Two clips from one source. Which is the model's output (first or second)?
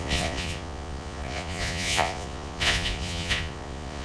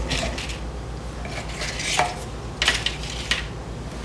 first